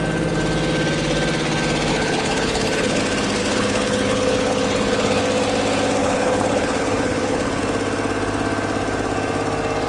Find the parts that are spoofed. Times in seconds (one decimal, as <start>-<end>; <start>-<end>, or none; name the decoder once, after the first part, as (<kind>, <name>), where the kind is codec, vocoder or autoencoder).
1.9-3.0 (codec, HILCodec); 3.4-5.2; 6.0-7.6